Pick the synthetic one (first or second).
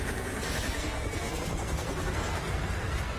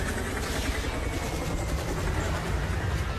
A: first